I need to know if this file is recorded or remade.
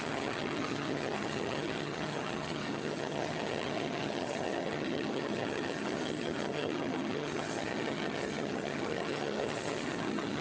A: remade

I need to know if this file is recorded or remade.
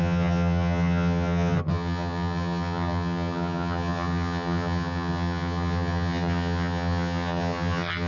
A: remade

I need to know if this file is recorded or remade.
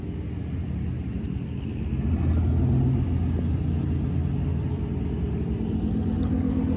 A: recorded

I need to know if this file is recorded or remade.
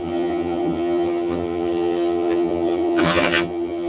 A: remade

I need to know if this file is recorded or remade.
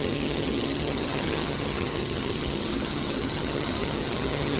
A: remade